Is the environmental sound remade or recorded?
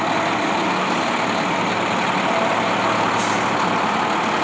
recorded